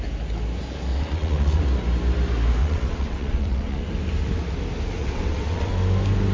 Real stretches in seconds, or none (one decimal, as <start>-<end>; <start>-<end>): 0.0-0.9; 1.6-2.6; 3.9-5.0; 5.7-6.3